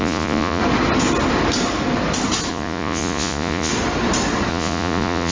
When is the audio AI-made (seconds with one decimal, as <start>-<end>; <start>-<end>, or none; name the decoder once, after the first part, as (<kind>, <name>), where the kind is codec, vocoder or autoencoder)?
0.0-0.6 (vocoder, Vocos); 2.5-3.7; 4.5-5.3